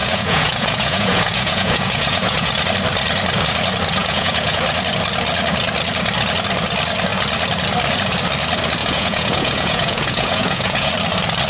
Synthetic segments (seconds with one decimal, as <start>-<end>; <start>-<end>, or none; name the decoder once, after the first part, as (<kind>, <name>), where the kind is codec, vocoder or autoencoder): 0.0-2.5 (vocoder, Vocos); 4.0-4.6; 8.8-10.9